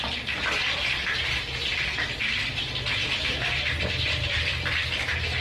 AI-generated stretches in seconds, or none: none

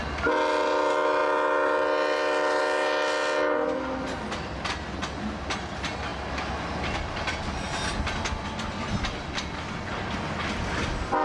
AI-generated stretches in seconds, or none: none

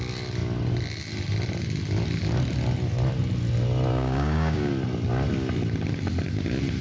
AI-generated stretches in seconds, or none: 3.9-4.7 (codec, DAC)